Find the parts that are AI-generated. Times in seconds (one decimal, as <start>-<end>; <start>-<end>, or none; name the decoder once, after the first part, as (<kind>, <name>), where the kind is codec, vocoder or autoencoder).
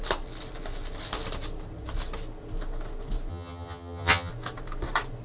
3.3-4.3 (vocoder, HiFi-GAN)